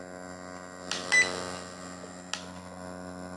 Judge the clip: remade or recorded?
recorded